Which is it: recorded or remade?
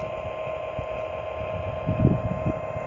recorded